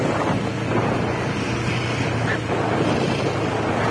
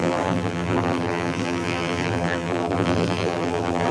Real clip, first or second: first